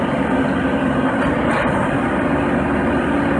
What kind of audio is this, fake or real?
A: real